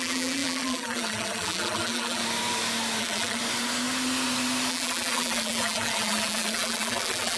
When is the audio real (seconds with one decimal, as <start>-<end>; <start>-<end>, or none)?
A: 2.2-3.0; 3.4-4.7